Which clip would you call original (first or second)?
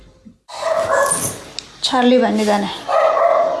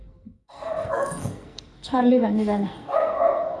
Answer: first